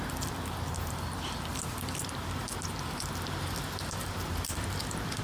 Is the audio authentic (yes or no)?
no